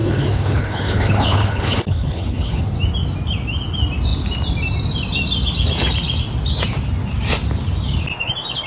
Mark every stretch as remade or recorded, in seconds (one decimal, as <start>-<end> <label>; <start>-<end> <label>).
0.0-2.6 remade; 2.6-8.7 recorded